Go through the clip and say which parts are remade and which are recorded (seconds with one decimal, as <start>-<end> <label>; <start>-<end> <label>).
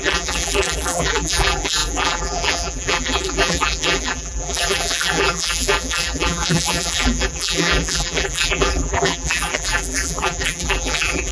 0.0-11.3 remade